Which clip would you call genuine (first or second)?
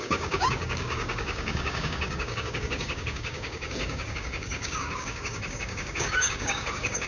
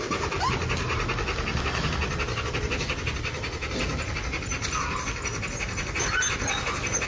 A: second